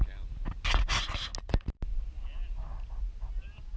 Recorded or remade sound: recorded